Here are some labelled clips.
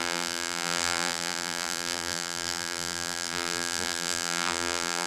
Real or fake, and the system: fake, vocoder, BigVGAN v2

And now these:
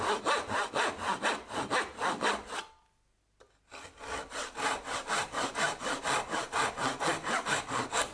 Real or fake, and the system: real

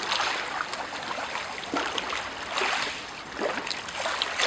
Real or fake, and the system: real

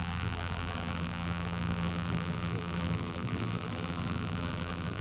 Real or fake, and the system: fake, vocoder, BigVGAN v2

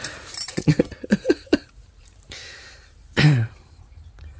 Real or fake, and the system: fake, vocoder, BigVGAN v2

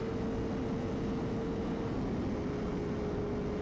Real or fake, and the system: real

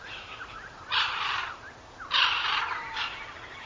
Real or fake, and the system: fake, vocoder, BigVGAN v2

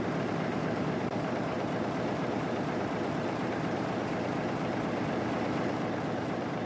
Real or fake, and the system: fake, vocoder, BigVGAN v2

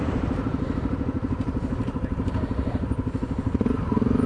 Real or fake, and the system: fake, vocoder, BigVGAN v2